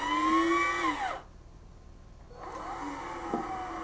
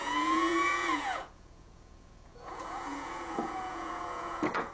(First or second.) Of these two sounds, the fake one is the second